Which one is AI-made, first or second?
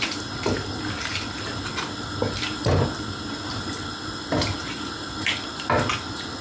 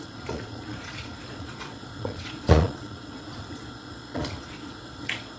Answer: second